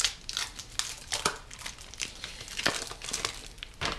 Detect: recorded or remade recorded